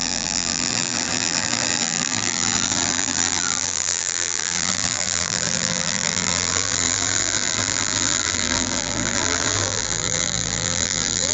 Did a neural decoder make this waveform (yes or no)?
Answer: yes